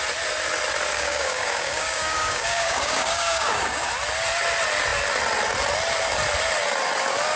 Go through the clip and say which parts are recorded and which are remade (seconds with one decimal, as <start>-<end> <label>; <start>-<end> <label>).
0.0-0.9 recorded; 0.9-3.9 remade; 3.9-7.4 recorded